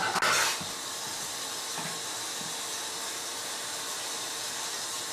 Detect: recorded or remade recorded